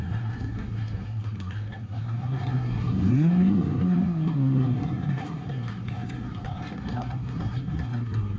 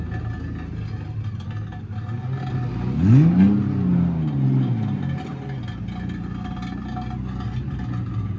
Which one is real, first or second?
second